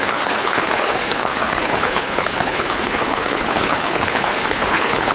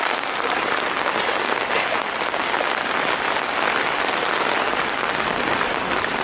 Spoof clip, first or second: first